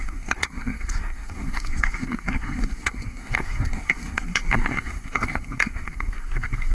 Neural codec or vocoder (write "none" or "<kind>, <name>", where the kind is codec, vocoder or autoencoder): codec, SNAC